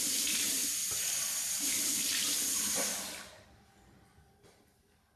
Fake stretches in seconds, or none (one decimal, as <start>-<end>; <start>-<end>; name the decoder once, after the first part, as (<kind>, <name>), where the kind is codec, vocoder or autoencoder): 0.0-0.6 (vocoder, BigVGAN v2); 1.5-2.9; 4.1-5.2